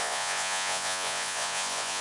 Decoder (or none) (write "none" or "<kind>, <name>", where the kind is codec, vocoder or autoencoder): vocoder, Vocos